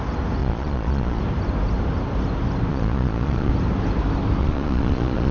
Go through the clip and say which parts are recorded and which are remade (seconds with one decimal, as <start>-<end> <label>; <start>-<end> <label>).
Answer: 0.0-0.4 recorded; 0.4-1.2 remade; 1.2-2.7 recorded; 2.7-3.5 remade; 3.5-4.4 recorded; 4.4-5.3 remade